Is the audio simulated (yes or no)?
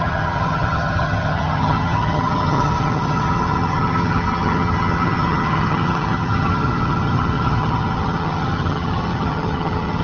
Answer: yes